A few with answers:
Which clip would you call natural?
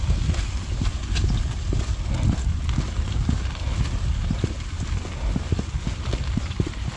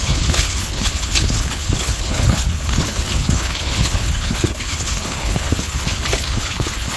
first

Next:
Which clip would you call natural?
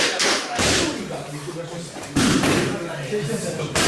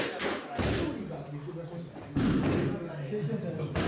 second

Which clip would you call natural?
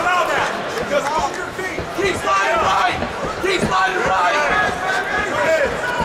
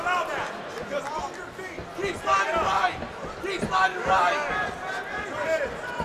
second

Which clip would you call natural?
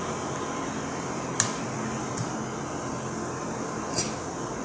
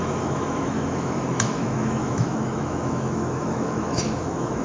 first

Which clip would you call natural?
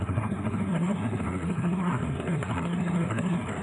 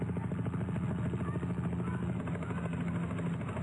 second